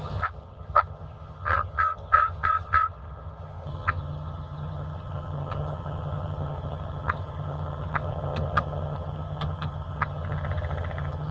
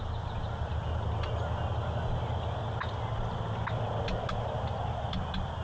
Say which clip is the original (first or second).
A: second